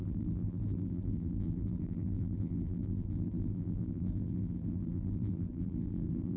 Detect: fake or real fake